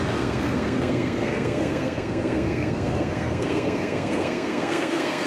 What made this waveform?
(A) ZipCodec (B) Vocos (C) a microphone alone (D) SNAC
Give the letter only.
D